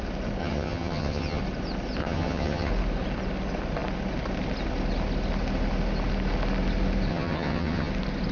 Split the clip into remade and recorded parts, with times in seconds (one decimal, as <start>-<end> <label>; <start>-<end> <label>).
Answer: 0.0-0.4 recorded; 0.4-1.4 remade; 1.4-2.0 recorded; 2.0-2.7 remade; 2.7-7.1 recorded; 7.1-7.9 remade; 7.9-8.3 recorded